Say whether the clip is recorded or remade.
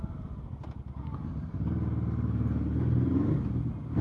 remade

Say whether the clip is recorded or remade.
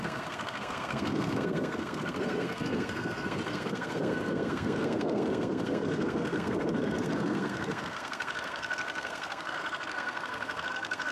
remade